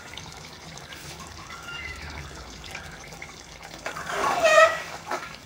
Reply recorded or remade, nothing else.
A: remade